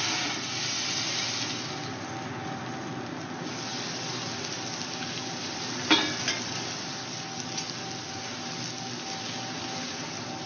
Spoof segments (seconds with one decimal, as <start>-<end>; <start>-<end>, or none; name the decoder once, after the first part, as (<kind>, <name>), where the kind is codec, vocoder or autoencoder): none